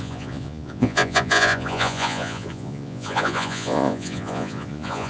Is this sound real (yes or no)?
no